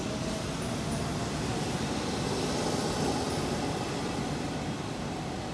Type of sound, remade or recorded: recorded